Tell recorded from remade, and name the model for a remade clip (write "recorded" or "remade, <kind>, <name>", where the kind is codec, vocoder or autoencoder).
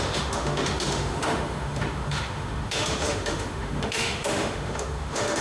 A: remade, autoencoder, DAC-VAE